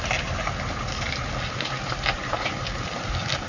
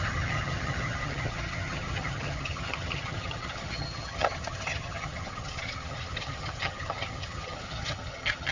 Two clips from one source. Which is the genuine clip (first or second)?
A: first